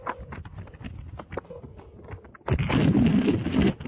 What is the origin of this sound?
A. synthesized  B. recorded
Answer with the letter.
B